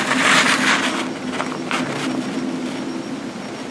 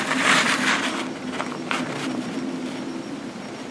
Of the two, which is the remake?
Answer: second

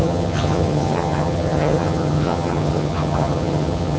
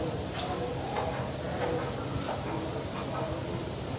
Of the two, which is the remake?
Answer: first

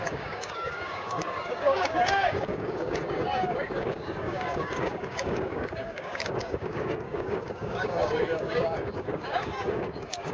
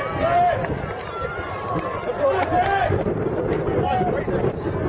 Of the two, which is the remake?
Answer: first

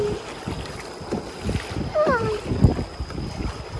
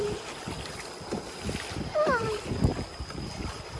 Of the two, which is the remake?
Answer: second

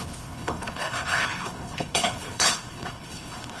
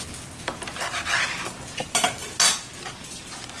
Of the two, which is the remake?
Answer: first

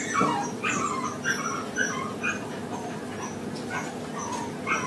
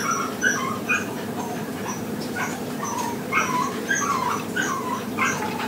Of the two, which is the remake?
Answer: second